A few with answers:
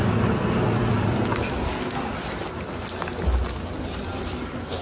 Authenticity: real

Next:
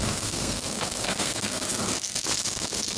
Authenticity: fake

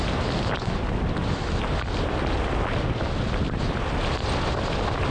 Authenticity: real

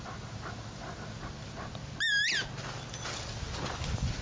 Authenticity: real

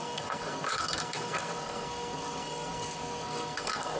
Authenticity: fake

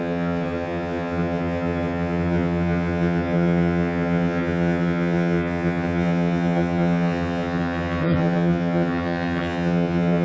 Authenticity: fake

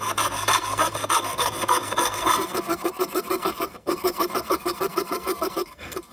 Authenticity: fake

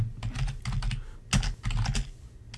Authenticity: real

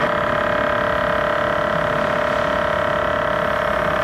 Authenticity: real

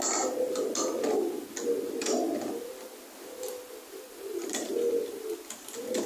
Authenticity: real